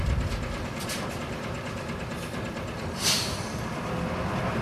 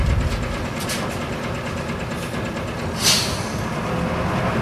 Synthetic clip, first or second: first